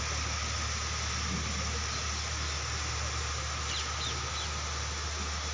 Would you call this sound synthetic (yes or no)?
no